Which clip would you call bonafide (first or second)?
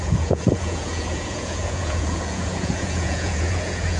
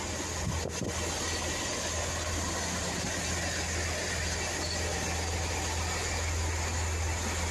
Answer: second